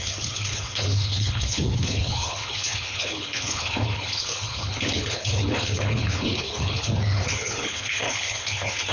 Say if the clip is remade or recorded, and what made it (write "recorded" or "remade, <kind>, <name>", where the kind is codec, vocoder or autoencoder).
remade, codec, HILCodec